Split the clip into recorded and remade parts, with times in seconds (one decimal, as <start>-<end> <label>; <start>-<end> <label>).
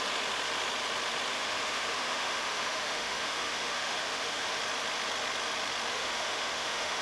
0.0-1.3 recorded; 1.3-4.6 remade; 4.6-5.9 recorded; 5.9-7.0 remade